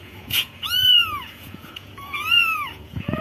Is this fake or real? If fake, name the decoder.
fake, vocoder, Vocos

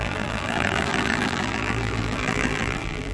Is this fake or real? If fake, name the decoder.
fake, vocoder, BigVGAN v2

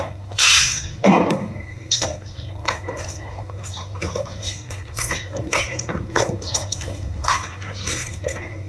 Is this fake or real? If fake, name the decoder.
fake, codec, SNAC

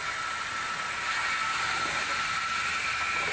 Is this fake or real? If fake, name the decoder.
real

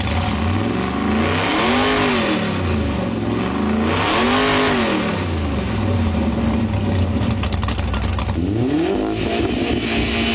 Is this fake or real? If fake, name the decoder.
real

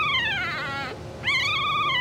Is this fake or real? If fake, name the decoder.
real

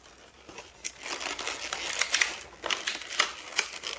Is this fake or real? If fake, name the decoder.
real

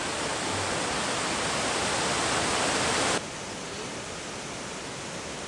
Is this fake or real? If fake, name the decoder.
real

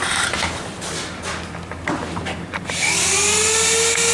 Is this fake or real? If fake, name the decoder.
real